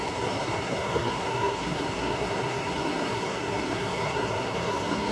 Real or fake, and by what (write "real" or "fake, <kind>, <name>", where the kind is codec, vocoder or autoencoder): fake, codec, SNAC